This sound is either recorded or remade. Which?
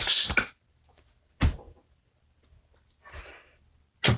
recorded